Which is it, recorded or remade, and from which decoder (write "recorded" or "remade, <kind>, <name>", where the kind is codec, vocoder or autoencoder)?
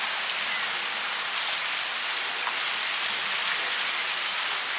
recorded